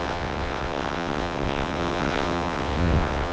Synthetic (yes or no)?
yes